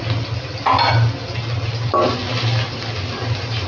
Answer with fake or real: real